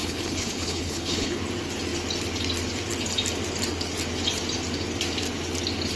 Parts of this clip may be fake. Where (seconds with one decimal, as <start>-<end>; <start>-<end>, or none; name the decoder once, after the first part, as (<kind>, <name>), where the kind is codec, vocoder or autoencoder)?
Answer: 0.0-1.4 (codec, HILCodec)